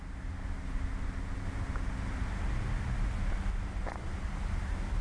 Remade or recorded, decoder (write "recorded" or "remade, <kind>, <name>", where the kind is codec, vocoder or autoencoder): recorded